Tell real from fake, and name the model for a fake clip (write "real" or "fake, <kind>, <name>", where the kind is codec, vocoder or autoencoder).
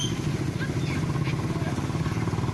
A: real